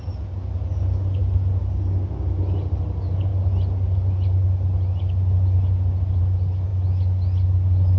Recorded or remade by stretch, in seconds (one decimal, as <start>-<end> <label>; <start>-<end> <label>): 0.0-8.0 recorded